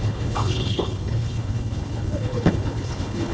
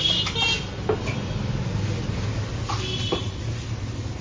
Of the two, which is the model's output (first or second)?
first